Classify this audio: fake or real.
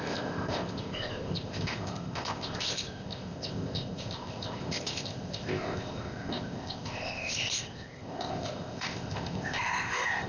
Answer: fake